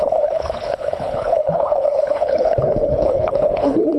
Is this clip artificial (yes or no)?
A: yes